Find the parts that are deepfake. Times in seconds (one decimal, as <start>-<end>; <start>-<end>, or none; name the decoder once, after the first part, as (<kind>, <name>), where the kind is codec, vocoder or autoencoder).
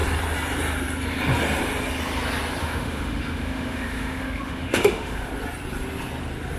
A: 2.6-5.3 (autoencoder, DAC-VAE)